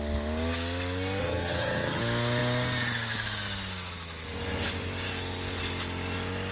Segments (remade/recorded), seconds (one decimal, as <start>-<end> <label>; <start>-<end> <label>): 0.0-1.2 recorded; 1.2-2.0 remade; 2.0-6.5 recorded